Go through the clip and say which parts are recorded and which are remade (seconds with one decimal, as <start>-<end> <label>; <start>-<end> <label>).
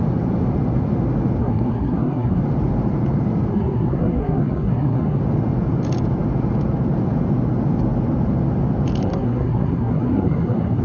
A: 0.0-1.4 recorded; 1.4-2.4 remade; 2.4-3.5 recorded; 3.5-5.2 remade; 5.2-9.0 recorded; 9.0-10.8 remade